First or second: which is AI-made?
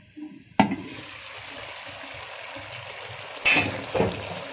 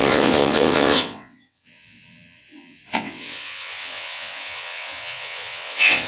second